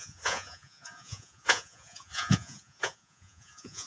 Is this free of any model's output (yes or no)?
no